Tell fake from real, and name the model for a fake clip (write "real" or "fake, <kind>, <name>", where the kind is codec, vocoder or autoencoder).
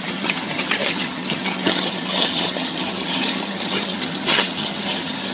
fake, vocoder, HiFi-GAN